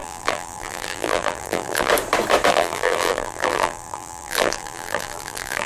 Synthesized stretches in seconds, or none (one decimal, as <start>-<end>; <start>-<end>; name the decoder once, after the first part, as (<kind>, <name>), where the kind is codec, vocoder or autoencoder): 0.0-1.9 (vocoder, BigVGAN v2); 2.5-5.7